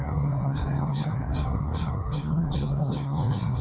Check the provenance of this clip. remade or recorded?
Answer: remade